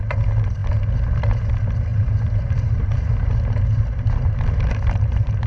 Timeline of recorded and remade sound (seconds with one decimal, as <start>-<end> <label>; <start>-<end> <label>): 0.0-1.9 recorded; 1.9-5.5 remade